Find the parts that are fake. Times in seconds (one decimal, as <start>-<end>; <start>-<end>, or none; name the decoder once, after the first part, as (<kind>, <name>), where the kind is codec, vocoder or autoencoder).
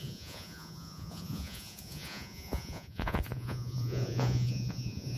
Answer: 0.0-5.2 (vocoder, Vocos)